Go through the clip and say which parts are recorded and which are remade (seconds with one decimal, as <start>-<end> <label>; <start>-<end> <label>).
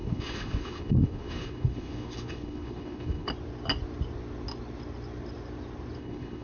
0.0-3.3 remade; 3.3-6.0 recorded; 6.0-6.4 remade